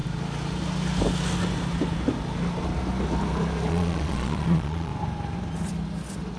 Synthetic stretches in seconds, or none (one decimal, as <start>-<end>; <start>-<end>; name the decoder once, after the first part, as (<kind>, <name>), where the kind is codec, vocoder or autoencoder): 3.7-4.9 (vocoder, Vocos)